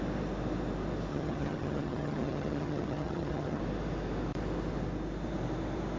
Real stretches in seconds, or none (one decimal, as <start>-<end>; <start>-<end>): 0.0-1.1; 3.6-6.0